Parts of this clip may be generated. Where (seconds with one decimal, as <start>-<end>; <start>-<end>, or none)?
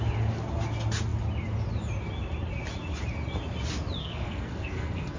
4.0-5.2